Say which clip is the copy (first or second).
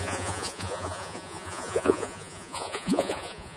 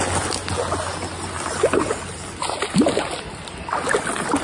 first